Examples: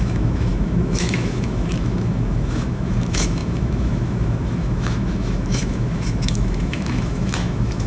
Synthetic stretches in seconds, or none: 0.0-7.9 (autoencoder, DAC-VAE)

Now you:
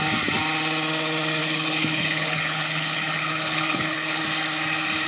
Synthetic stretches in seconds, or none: 1.4-4.2 (codec, HILCodec)

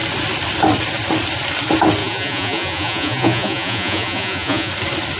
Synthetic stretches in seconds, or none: 2.0-4.7 (vocoder, Vocos)

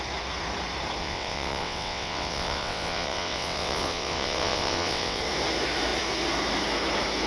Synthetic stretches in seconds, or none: 1.0-5.2 (vocoder, WaveNeXt)

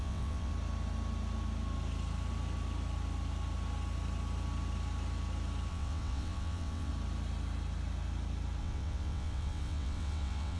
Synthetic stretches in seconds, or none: 0.0-0.5 (vocoder, WaveNeXt); 5.7-6.9; 8.6-10.6

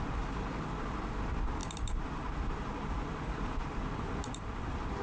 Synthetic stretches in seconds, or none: 0.0-5.0 (vocoder, BigVGAN v2)

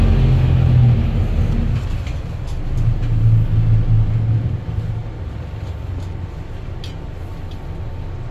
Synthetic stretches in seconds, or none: none

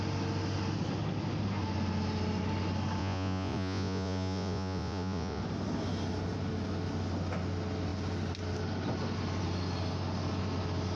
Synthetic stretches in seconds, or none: 3.0-5.4 (vocoder, Vocos)